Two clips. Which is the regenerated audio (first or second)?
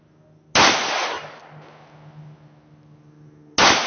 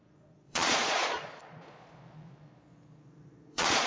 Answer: second